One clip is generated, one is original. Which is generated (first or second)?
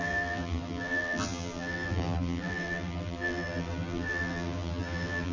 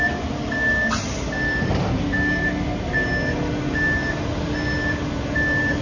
first